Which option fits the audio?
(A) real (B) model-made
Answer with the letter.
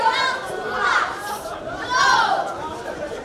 B